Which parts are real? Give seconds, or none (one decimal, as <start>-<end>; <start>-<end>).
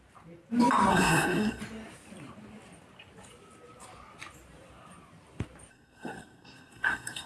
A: 0.0-0.9; 1.6-5.7